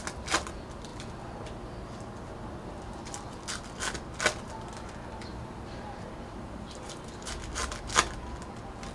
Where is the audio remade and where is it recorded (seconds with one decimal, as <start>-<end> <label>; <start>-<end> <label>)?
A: 0.0-5.3 recorded; 5.3-7.3 remade; 7.3-8.9 recorded